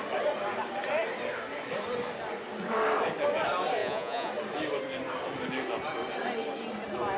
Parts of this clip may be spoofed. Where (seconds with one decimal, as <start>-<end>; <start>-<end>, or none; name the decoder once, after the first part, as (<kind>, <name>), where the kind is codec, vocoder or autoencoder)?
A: 3.8-4.3 (vocoder, Vocos)